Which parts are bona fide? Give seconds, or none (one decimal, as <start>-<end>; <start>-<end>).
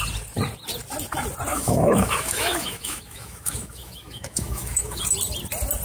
0.0-1.5; 5.0-5.8